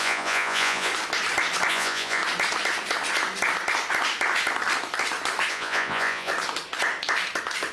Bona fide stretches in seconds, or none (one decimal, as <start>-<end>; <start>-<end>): 0.9-1.7; 2.2-5.5; 6.3-7.7